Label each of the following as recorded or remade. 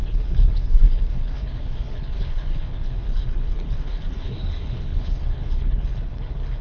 remade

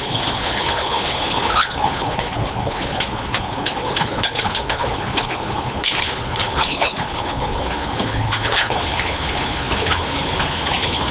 remade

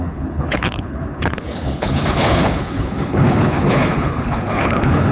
remade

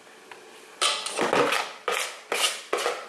recorded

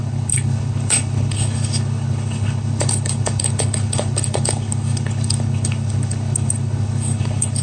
remade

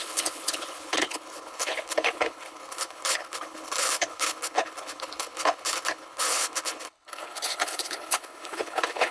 remade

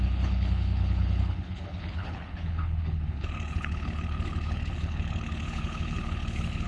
remade